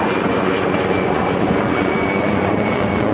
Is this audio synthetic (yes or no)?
yes